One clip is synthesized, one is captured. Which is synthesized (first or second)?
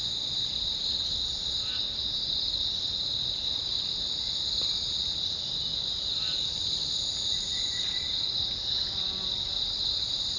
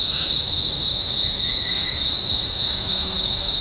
second